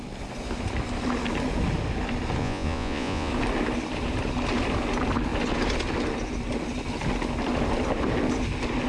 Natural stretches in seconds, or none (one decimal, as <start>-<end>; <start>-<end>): 0.0-2.4; 3.3-8.9